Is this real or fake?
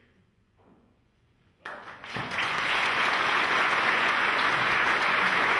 fake